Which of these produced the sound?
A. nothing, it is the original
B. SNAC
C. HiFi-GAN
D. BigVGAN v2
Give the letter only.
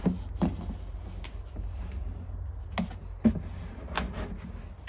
A